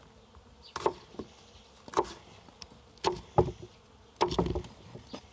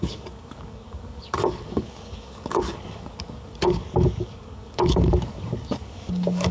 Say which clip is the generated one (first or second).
second